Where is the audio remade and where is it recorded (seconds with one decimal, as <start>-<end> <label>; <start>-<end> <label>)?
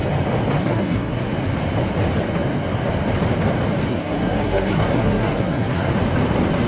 0.0-0.6 recorded; 0.6-1.3 remade; 1.3-3.9 recorded; 3.9-5.9 remade; 5.9-6.7 recorded